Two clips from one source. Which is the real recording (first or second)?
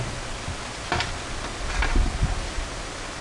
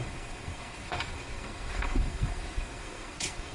first